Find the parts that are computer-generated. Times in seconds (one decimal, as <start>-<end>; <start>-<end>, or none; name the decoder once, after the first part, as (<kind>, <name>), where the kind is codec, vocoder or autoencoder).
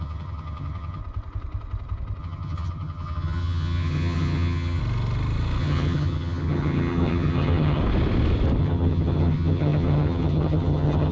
0.0-1.0 (vocoder, HiFi-GAN); 2.2-4.8; 5.6-7.8; 8.6-11.1